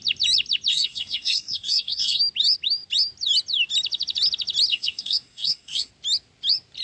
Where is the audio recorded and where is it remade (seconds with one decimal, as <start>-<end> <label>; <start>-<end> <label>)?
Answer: 0.0-0.7 recorded; 0.7-2.2 remade; 2.2-4.7 recorded; 4.7-5.9 remade; 5.9-6.8 recorded